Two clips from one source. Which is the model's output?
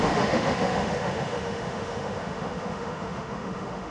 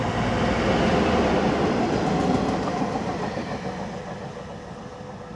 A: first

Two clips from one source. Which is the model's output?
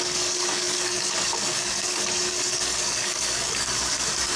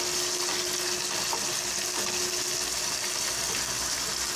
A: first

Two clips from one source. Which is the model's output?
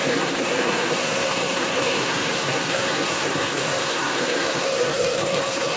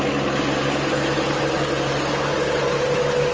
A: first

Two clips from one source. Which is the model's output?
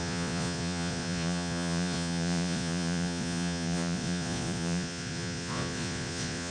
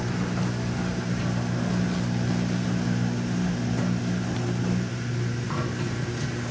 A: first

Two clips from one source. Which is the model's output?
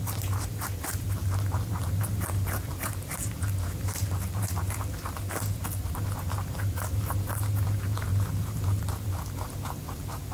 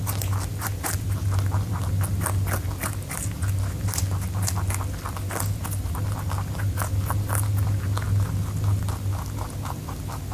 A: first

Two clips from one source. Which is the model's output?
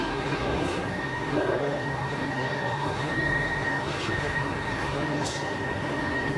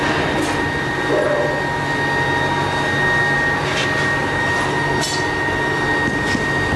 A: first